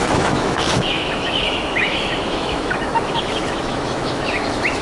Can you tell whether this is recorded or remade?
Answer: remade